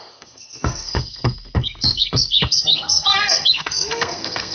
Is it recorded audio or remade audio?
remade